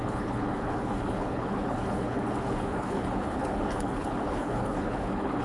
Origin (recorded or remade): remade